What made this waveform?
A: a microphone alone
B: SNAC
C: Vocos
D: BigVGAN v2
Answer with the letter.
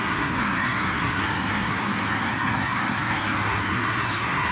B